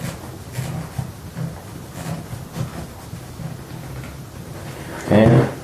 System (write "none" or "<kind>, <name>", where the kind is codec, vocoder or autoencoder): none